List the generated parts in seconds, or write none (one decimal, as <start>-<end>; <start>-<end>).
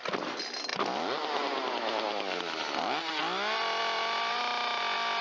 none